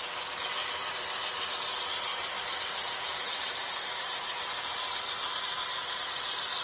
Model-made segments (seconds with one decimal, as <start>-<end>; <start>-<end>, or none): 0.6-1.5; 2.1-5.4